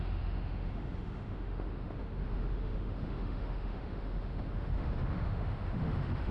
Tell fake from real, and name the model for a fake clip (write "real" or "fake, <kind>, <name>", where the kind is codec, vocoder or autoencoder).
fake, autoencoder, DAC-VAE